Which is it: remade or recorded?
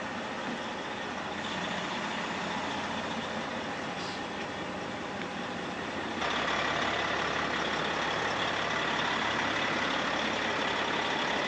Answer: recorded